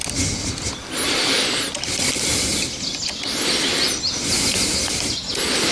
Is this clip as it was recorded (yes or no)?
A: yes